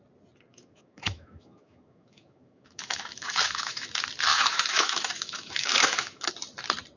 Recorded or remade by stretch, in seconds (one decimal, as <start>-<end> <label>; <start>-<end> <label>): 0.0-0.5 recorded; 0.5-3.9 remade; 3.9-4.3 recorded; 4.3-6.3 remade; 6.3-7.0 recorded